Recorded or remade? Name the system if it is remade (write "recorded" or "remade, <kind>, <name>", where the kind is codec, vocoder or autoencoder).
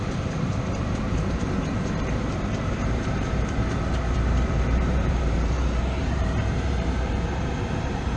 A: remade, vocoder, BigVGAN v2